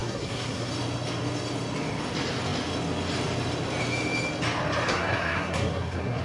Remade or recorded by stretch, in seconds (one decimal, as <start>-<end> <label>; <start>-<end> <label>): 0.0-0.7 remade; 0.7-4.9 recorded; 4.9-6.2 remade